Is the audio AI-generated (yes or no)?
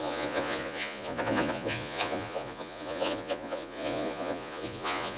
yes